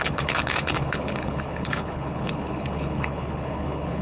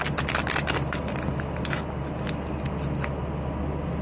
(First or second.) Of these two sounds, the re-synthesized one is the first